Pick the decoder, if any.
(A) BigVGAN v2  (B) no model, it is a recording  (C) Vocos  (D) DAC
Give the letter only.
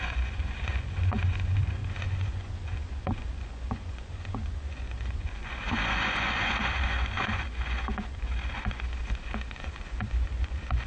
C